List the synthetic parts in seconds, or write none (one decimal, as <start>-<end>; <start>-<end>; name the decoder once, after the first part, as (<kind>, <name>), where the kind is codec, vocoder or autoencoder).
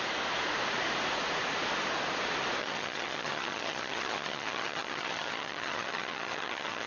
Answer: 2.6-6.9 (vocoder, HiFi-GAN)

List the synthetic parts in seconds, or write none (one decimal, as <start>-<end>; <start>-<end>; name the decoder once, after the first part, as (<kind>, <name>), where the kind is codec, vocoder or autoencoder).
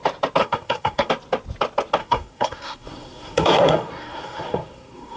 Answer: 0.4-1.1 (codec, SNAC); 2.0-5.2